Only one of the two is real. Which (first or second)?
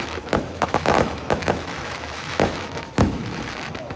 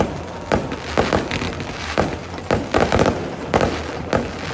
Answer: second